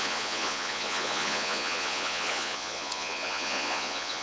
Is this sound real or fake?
fake